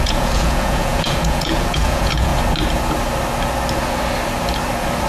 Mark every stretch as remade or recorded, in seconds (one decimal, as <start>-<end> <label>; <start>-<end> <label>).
0.0-2.3 remade; 2.3-5.1 recorded